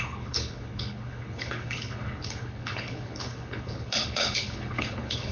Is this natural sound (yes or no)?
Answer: no